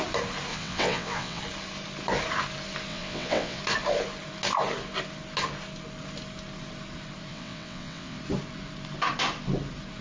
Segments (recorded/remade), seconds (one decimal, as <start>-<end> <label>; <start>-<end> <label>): 0.0-0.5 recorded; 0.5-1.4 remade; 1.4-2.9 recorded; 2.9-3.6 remade; 3.6-7.3 recorded; 7.3-8.2 remade; 8.2-10.0 recorded